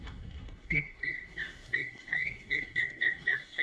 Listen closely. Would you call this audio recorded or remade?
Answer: remade